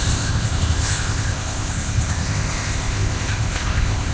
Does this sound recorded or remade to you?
remade